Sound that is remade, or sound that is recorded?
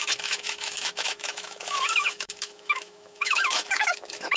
remade